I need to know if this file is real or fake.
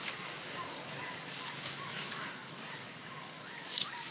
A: fake